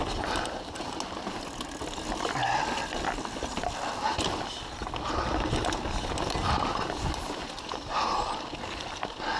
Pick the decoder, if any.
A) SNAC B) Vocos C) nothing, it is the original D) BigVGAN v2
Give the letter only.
C